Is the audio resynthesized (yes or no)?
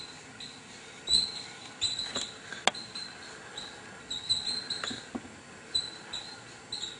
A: no